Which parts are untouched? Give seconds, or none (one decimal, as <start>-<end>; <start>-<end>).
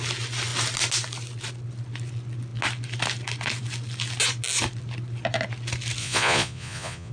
0.0-6.0